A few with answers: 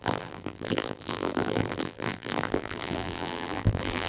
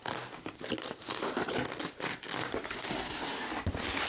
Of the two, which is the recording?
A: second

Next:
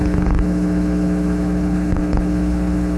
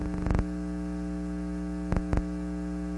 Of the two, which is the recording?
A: second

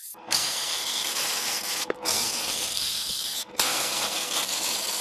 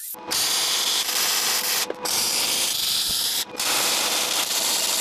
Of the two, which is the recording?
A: second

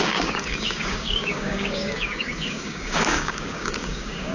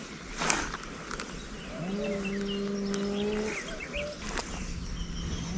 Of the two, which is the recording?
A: second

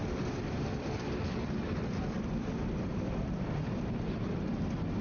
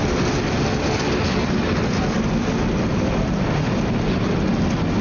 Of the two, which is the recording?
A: second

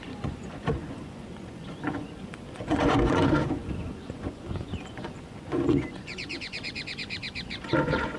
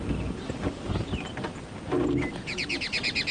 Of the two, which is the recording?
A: second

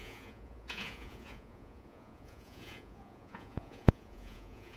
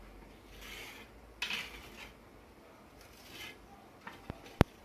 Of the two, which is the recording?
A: second